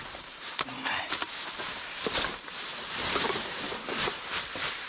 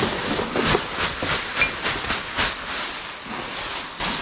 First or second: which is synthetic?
first